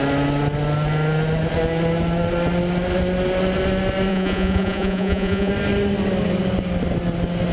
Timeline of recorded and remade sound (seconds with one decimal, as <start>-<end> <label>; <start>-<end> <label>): 0.0-4.1 recorded; 4.1-5.5 remade; 5.5-7.5 recorded